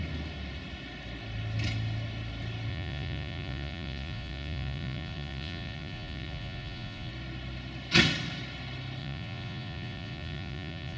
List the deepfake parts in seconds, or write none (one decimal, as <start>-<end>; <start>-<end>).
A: 2.7-7.1; 9.0-11.0

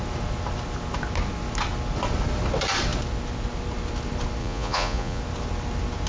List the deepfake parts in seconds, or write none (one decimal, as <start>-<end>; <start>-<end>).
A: 4.4-5.2

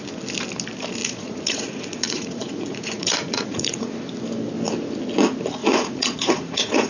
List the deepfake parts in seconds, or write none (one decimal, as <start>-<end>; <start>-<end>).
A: 1.0-3.9; 5.6-6.9

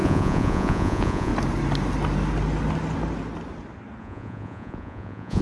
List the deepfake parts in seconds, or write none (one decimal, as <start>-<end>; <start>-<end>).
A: 0.0-1.3; 4.0-5.4

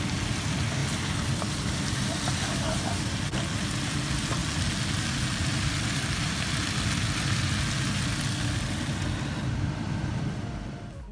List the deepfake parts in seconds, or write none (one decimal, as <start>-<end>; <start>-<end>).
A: none

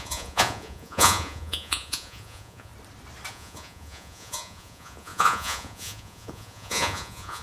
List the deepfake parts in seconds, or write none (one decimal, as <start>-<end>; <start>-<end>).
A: 0.0-2.7; 3.3-7.4

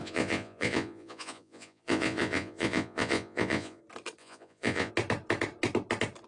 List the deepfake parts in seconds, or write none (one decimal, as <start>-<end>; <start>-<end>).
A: 0.0-3.8; 4.2-4.9